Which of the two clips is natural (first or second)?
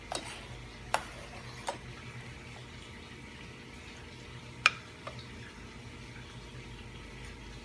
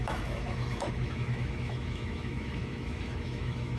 first